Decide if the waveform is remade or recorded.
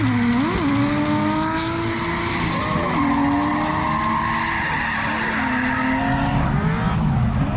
recorded